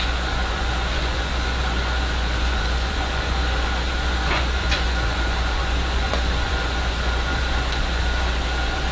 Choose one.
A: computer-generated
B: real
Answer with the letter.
A